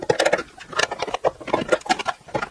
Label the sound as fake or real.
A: real